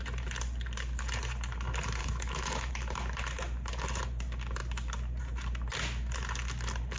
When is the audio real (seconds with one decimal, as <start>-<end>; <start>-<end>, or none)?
0.0-2.0; 2.7-7.0